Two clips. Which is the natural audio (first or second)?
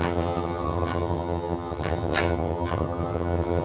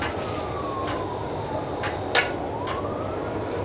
second